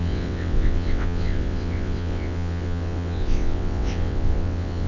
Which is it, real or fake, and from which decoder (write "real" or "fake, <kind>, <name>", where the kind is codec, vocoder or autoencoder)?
fake, vocoder, WaveNeXt